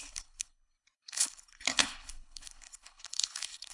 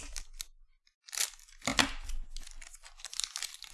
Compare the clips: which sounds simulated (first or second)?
first